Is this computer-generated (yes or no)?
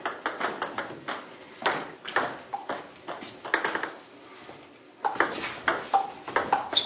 no